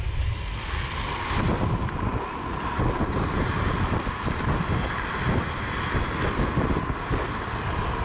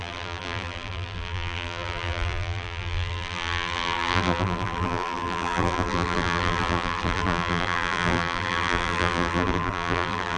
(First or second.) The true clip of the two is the first